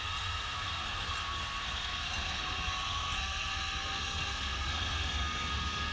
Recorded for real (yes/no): no